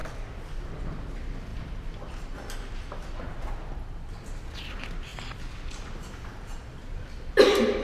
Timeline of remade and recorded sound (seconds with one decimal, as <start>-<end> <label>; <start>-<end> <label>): 0.0-7.8 recorded